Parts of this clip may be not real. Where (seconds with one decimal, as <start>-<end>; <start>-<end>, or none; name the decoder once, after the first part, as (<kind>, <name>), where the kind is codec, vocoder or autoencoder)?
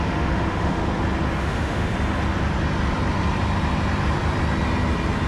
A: 0.0-0.8 (autoencoder, DAC-VAE); 1.4-1.9